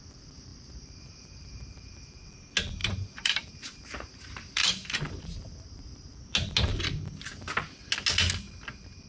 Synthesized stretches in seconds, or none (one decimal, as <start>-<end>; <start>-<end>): 0.5-1.6; 2.8-5.0